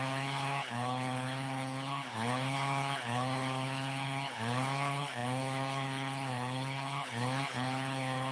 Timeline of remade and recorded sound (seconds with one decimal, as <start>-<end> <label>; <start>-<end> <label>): 0.0-8.3 remade

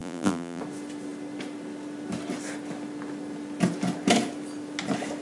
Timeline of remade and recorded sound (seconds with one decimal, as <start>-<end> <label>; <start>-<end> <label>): 0.0-0.6 remade; 0.6-5.2 recorded

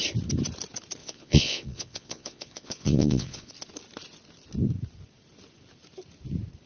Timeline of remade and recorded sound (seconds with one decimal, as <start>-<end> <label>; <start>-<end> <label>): 0.0-1.0 recorded; 1.0-3.5 remade; 3.5-6.7 recorded

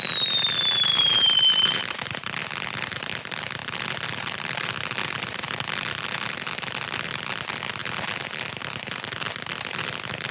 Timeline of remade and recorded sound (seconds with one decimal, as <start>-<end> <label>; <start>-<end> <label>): 0.0-0.9 recorded; 0.9-1.8 remade; 1.8-10.3 recorded

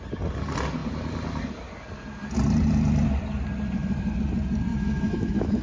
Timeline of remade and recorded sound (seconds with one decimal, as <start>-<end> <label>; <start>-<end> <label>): 0.0-4.7 recorded; 4.7-5.6 remade

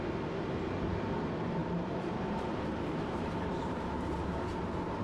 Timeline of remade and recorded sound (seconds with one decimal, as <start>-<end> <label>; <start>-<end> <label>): 0.0-1.6 recorded; 1.6-4.6 remade; 4.6-5.0 recorded